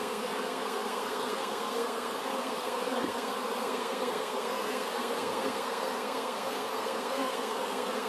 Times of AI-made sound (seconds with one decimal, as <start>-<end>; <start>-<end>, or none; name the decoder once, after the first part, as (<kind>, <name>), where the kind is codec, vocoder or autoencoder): 0.0-8.1 (codec, SNAC)